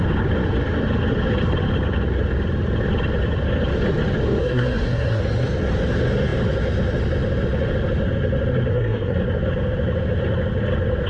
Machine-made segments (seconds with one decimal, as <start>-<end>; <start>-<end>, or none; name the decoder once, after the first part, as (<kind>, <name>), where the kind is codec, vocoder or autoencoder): 4.4-5.2 (codec, SNAC); 8.7-9.2